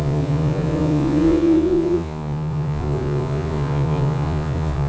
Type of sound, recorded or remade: remade